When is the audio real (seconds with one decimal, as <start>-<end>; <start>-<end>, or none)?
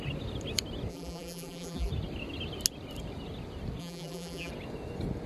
0.0-0.9; 1.9-3.8; 4.5-5.3